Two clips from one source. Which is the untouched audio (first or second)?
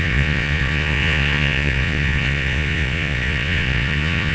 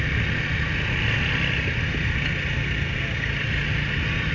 second